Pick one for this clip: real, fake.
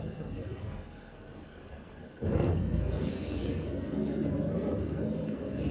fake